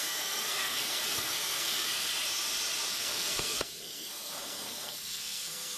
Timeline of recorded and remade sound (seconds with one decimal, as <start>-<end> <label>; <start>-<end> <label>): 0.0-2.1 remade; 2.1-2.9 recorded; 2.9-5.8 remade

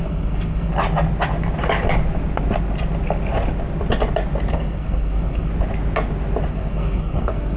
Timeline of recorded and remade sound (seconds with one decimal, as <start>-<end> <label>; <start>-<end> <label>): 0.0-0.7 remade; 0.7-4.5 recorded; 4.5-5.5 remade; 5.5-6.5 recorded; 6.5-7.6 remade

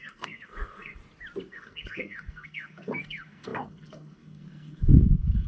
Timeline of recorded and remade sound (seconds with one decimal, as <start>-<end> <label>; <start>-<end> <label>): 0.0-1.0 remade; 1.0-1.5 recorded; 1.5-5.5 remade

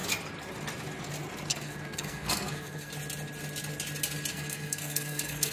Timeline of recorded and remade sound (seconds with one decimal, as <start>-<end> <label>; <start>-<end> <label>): 0.0-1.5 recorded; 1.5-2.9 remade; 2.9-4.3 recorded; 4.3-5.5 remade

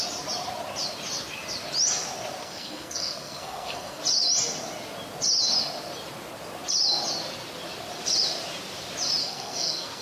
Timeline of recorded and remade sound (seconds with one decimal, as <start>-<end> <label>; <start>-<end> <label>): 0.0-2.4 recorded; 2.4-4.0 remade; 4.0-9.2 recorded; 9.2-10.0 remade